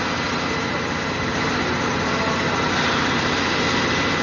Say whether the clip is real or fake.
real